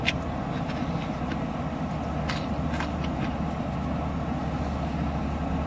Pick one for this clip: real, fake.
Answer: real